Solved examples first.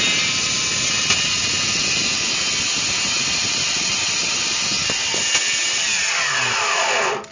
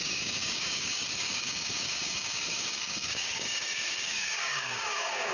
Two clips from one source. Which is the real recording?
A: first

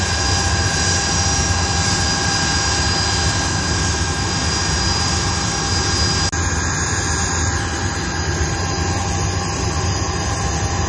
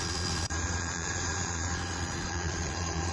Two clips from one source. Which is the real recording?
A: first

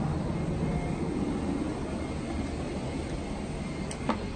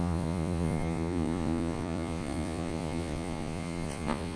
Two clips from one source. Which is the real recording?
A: first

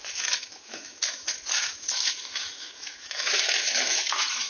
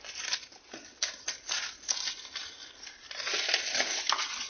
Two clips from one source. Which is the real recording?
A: second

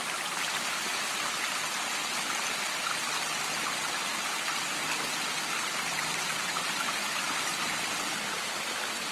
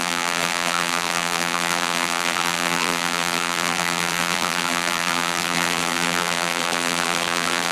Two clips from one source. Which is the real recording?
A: first